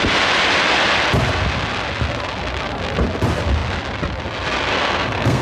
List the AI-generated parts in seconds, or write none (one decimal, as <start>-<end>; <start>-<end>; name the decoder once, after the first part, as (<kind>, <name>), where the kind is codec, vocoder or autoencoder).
4.7-5.4 (codec, SNAC)